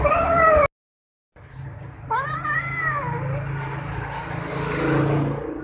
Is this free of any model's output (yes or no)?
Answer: yes